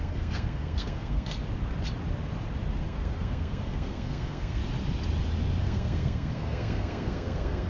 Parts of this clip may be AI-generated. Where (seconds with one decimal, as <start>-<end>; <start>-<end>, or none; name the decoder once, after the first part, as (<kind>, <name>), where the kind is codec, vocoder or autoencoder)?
0.0-1.4 (codec, SNAC); 2.8-4.6; 5.6-7.7